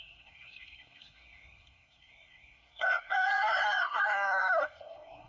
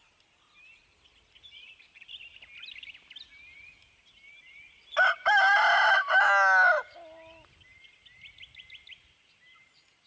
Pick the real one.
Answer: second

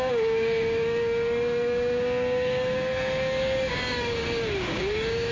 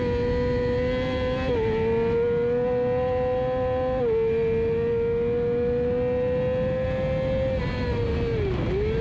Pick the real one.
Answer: second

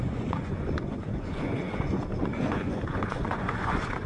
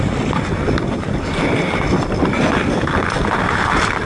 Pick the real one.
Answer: second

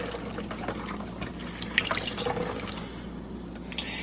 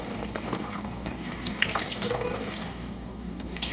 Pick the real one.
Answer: first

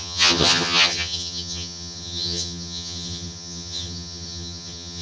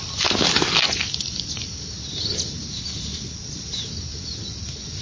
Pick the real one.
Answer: second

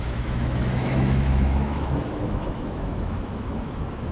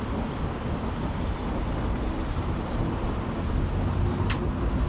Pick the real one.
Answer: second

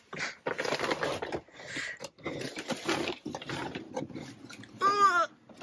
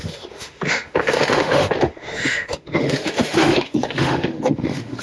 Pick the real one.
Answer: first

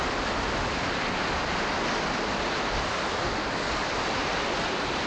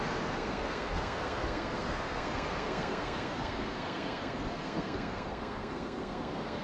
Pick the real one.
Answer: first